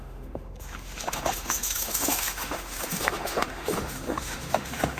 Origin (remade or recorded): remade